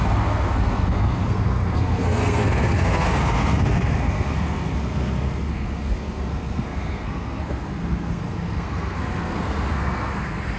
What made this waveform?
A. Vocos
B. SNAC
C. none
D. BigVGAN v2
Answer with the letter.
B